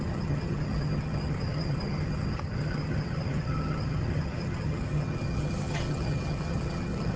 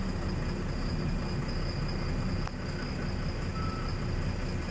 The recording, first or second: second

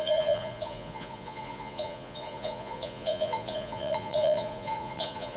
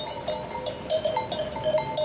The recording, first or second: second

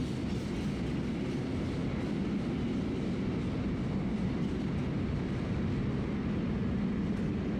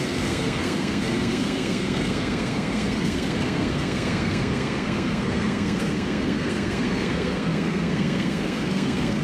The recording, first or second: first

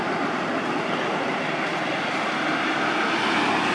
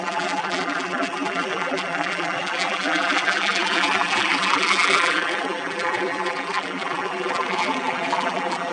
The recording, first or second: first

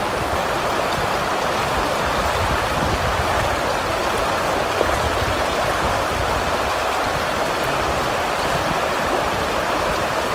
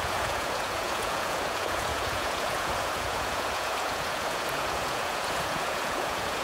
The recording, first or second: first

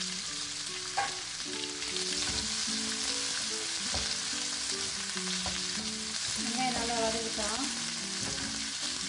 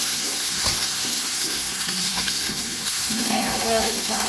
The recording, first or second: first